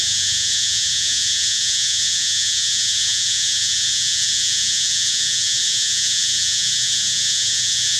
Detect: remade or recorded remade